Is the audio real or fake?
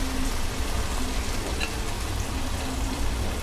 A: fake